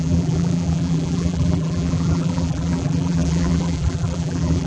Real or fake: fake